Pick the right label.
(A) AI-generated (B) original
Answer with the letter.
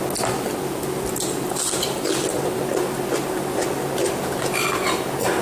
B